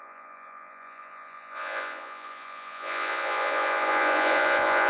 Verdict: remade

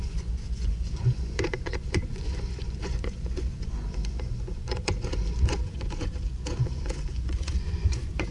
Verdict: remade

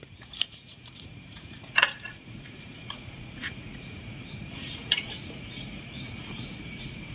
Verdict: remade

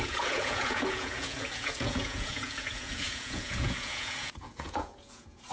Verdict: remade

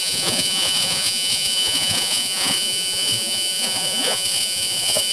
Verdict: remade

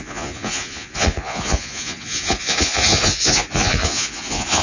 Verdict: remade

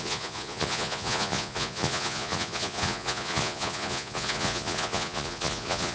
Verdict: remade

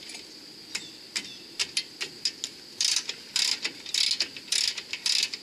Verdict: recorded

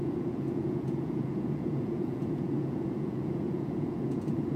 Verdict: remade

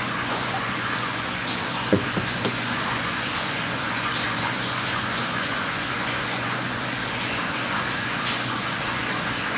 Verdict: remade